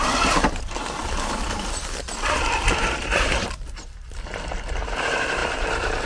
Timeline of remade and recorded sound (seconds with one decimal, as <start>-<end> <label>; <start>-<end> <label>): 0.0-6.1 remade